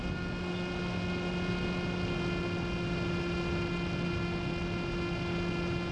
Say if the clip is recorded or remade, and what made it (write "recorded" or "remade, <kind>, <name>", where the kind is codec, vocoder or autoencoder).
recorded